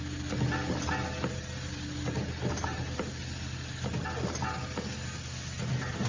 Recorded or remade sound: recorded